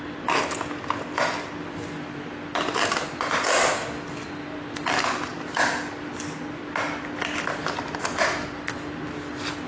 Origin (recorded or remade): recorded